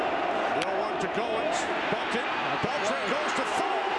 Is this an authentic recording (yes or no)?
yes